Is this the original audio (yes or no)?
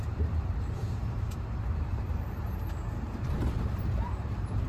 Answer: no